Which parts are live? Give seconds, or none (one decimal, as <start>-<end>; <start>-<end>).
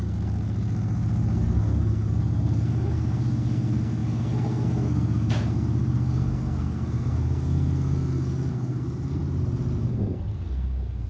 9.2-9.8